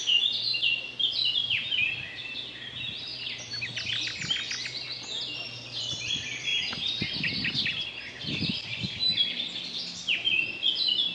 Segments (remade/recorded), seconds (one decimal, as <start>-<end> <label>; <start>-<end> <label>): 0.0-11.1 recorded